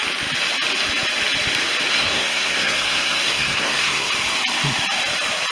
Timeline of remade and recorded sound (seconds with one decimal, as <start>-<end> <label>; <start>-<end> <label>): 0.0-1.9 recorded; 1.9-4.1 remade; 4.1-5.5 recorded

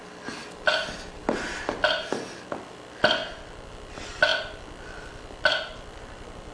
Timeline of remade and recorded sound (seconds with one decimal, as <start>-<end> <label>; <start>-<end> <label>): 0.0-6.5 recorded

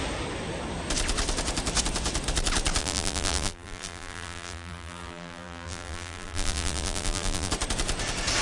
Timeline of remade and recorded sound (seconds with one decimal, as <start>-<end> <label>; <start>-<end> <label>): 0.0-2.8 recorded; 2.8-7.5 remade; 7.5-8.4 recorded